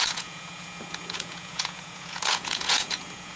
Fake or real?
fake